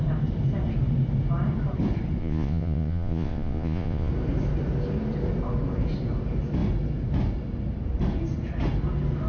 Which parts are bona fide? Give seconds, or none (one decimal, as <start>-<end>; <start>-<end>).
0.0-2.2; 4.1-9.3

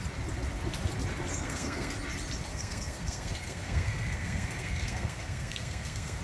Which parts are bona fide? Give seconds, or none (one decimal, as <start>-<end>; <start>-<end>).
0.0-1.3; 1.9-2.5

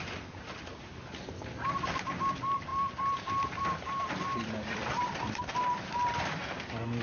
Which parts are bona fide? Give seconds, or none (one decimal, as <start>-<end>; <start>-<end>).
2.7-3.6

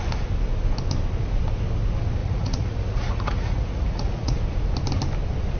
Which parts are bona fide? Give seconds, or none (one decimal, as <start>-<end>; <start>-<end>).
0.0-2.2; 4.4-5.6

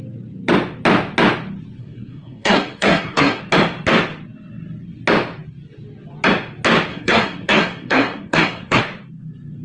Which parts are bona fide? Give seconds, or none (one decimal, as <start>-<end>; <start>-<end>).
0.0-1.8; 3.4-6.9; 8.8-9.6

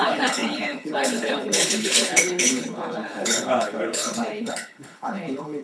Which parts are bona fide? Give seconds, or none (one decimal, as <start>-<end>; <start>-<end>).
none

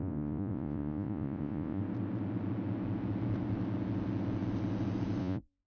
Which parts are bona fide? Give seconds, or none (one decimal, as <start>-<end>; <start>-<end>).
1.8-5.2